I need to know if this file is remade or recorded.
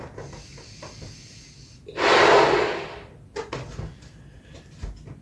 recorded